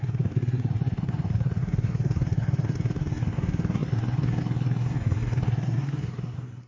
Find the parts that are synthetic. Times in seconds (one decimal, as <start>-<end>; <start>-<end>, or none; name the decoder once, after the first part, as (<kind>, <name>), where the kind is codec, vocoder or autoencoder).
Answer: 0.0-6.7 (codec, SNAC)